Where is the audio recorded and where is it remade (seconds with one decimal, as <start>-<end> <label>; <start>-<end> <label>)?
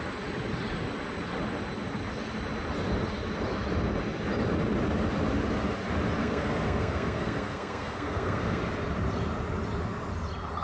0.0-6.2 recorded; 6.2-8.6 remade; 8.6-10.6 recorded